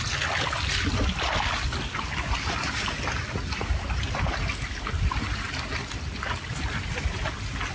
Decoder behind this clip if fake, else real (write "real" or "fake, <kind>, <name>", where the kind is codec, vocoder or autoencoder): real